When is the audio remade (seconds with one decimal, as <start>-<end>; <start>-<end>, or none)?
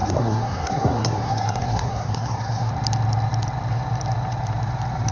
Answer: 0.0-2.7